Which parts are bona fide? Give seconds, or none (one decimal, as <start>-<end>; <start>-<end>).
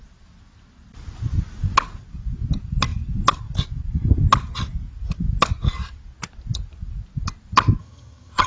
0.0-7.8